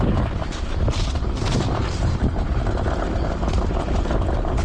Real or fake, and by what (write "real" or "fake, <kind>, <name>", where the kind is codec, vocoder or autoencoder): real